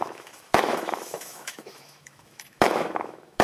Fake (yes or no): yes